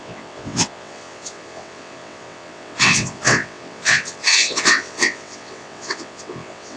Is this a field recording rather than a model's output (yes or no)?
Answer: no